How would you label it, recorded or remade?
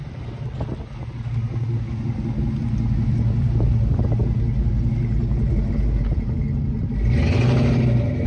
recorded